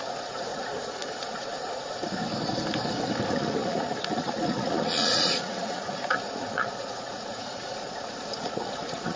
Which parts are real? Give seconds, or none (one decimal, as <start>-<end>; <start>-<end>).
2.2-3.3